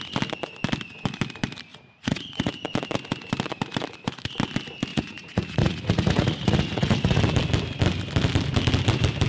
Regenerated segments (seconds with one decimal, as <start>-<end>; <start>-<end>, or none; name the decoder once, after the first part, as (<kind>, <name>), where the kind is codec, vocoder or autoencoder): 1.7-2.5 (vocoder, Vocos); 4.9-7.2